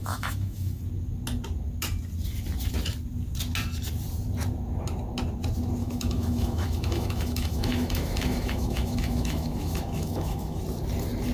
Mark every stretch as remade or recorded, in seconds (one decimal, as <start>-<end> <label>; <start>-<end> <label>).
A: 0.0-0.8 remade; 0.8-5.8 recorded; 5.8-10.6 remade; 10.6-11.3 recorded